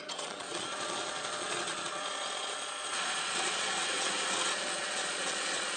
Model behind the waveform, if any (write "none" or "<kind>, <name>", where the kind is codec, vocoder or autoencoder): vocoder, Vocos